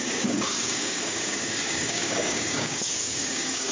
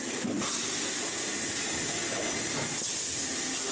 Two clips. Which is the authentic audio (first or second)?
second